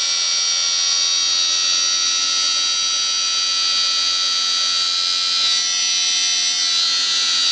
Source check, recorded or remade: recorded